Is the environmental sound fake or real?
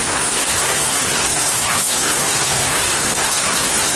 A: fake